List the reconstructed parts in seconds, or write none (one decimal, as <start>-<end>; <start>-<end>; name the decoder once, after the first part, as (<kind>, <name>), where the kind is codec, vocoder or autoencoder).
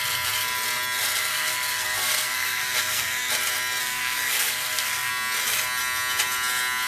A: 1.3-3.3 (codec, SNAC); 3.8-5.1